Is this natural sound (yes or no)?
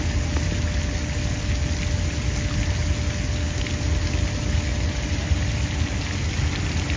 yes